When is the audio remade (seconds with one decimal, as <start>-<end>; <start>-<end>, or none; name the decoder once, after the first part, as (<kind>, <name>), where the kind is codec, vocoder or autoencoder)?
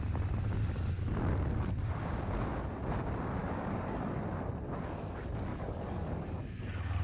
3.4-4.2 (codec, DAC); 5.5-6.4